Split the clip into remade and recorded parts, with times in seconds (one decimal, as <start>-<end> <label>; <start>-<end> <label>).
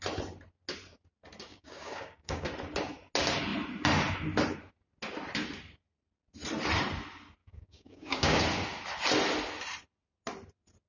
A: 0.0-1.5 recorded; 1.5-2.5 remade; 2.5-7.4 recorded; 7.4-8.4 remade; 8.4-10.9 recorded